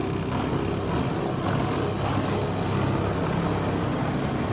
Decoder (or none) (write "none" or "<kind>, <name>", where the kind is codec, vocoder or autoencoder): none